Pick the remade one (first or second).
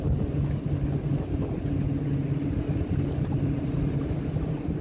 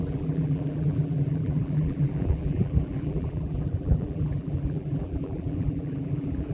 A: second